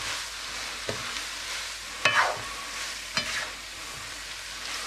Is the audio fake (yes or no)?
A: no